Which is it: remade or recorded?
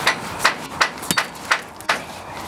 recorded